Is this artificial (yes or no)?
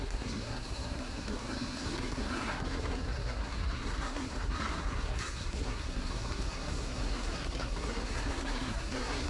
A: yes